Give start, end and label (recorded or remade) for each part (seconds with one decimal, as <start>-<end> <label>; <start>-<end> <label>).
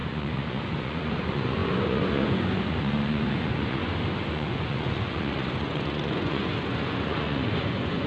0.0-3.8 remade; 3.8-4.3 recorded; 4.3-8.1 remade